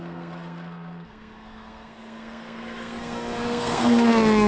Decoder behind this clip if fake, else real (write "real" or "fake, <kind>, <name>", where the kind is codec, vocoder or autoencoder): fake, codec, SNAC